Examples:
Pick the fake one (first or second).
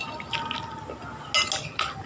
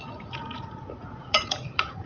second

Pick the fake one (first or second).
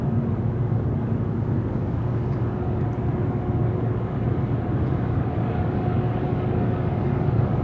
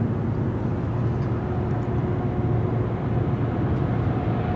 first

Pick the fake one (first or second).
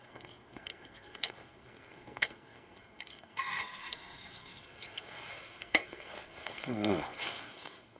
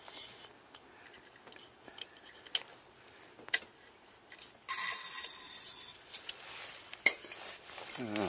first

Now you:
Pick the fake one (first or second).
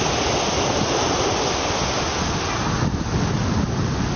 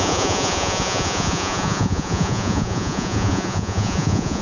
second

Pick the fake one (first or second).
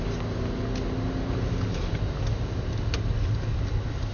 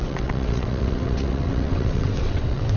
second